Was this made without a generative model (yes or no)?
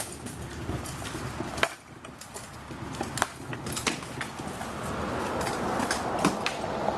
yes